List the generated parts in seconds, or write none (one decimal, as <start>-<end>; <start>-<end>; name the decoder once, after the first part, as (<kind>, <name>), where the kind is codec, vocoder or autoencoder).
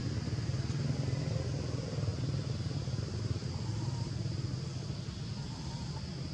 none